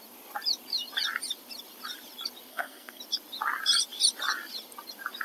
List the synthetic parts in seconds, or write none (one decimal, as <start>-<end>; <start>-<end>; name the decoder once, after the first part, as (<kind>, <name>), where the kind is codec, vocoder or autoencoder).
2.5-3.0 (codec, SNAC)